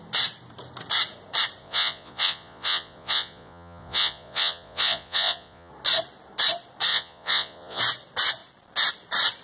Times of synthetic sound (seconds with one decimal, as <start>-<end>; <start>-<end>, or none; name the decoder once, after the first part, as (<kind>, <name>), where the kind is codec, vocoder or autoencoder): 1.6-5.7 (vocoder, Vocos); 6.9-7.8